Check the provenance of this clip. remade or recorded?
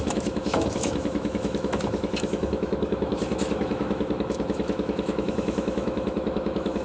remade